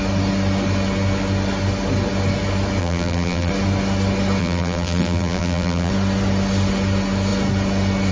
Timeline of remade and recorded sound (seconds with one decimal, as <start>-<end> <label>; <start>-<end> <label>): 0.0-2.8 recorded; 2.8-3.5 remade; 3.5-4.4 recorded; 4.4-5.9 remade; 5.9-8.1 recorded